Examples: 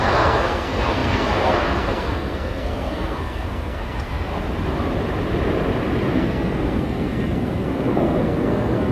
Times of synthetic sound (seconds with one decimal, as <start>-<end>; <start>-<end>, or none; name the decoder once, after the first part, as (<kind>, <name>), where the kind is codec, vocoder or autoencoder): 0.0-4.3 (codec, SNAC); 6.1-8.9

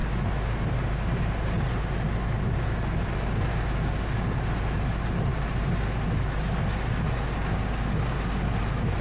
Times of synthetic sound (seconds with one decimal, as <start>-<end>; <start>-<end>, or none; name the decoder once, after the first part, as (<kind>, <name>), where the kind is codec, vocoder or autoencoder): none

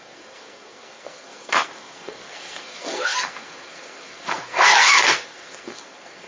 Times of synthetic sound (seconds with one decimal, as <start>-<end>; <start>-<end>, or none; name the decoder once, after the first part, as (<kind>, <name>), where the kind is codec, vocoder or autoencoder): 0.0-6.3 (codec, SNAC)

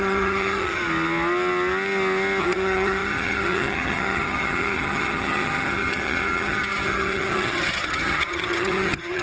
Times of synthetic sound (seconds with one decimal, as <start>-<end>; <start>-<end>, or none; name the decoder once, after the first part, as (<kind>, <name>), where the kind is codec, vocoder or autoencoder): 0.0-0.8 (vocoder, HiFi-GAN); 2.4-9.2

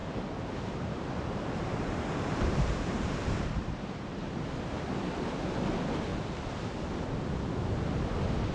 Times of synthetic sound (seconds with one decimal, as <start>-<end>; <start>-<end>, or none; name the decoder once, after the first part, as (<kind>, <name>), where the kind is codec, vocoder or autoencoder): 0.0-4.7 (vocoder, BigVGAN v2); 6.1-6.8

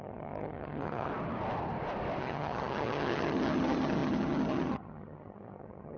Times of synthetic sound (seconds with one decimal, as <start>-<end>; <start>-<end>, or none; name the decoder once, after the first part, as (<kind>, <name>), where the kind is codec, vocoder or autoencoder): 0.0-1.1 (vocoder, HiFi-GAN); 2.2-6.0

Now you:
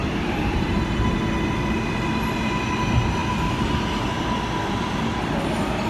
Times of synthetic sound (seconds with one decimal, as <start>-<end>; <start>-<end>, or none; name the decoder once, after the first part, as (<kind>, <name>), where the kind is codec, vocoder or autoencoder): 0.0-1.2 (vocoder, BigVGAN v2)

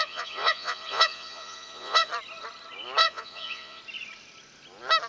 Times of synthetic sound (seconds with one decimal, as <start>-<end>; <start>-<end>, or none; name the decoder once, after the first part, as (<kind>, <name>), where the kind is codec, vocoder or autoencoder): 0.0-2.1 (vocoder, Vocos); 3.0-3.8